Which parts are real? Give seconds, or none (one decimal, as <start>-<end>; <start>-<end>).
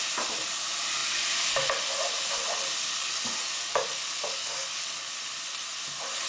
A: 0.0-3.0; 3.9-4.4; 5.1-6.3